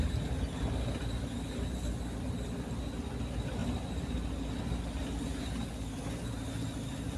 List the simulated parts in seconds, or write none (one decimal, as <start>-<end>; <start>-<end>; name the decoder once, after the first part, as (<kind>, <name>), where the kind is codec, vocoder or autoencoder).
none